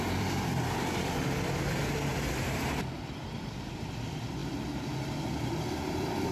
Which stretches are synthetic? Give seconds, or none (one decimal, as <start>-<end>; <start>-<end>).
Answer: 0.0-4.4; 5.3-6.3